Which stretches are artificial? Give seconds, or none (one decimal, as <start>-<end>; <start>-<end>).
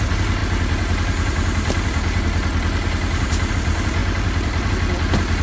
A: 0.4-3.5; 4.0-4.7